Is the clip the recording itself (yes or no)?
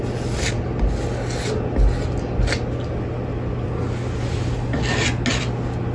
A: yes